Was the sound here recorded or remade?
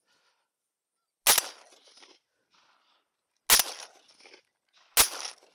recorded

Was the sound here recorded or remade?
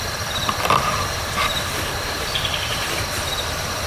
recorded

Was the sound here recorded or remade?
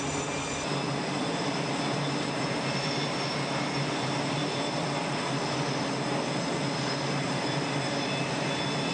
recorded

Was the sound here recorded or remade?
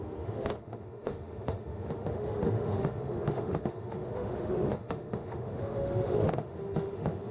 remade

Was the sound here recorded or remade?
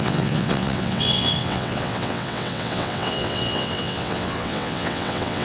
remade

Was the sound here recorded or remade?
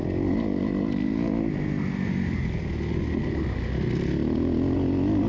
recorded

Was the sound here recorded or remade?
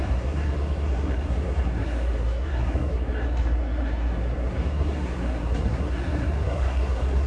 remade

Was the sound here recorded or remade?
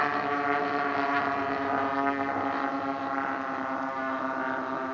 recorded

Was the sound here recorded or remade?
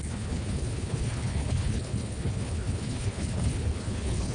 remade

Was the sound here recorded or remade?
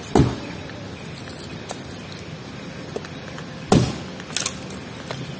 recorded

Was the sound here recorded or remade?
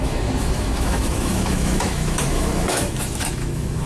remade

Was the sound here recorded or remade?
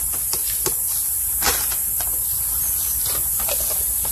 remade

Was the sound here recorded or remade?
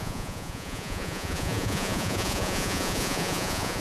remade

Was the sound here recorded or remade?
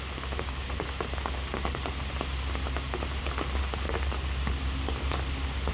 recorded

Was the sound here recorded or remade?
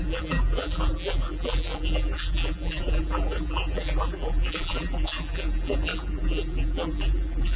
remade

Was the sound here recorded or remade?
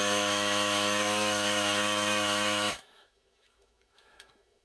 remade